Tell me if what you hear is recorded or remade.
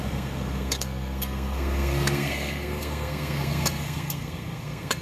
remade